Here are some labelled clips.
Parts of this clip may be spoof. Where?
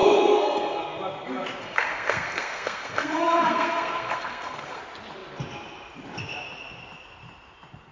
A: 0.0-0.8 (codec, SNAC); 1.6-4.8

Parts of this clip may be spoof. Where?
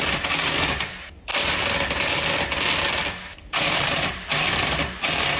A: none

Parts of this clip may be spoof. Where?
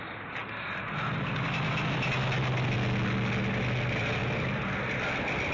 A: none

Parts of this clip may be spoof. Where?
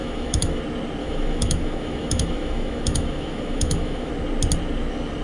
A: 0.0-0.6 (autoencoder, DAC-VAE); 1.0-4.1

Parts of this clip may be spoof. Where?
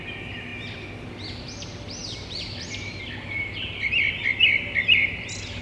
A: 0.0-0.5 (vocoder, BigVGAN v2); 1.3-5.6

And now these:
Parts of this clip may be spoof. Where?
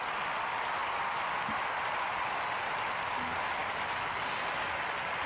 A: none